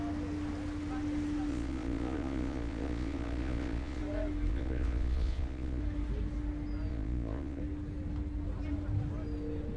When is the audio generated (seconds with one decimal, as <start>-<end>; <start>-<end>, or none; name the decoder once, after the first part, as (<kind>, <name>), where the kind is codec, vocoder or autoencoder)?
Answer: 1.5-4.0 (vocoder, Vocos); 4.5-5.8; 6.9-7.6